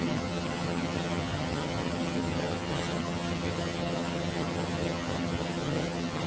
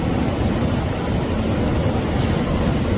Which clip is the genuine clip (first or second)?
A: second